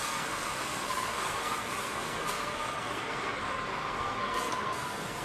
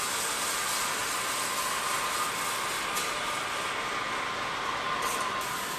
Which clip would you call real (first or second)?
second